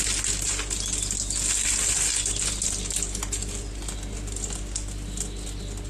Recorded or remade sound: recorded